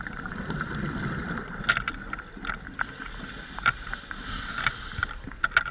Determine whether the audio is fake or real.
real